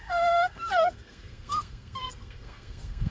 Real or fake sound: fake